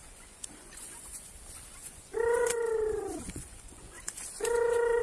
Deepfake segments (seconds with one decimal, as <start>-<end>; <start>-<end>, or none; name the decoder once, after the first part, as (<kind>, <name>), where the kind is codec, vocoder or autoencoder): 0.0-1.3 (vocoder, Vocos); 1.8-5.0